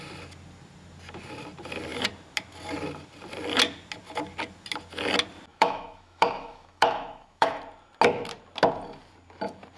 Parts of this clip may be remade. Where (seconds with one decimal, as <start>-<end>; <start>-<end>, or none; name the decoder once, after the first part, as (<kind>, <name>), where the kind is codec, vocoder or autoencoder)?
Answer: 5.5-7.6 (autoencoder, DAC-VAE)